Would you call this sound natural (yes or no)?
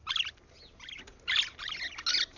yes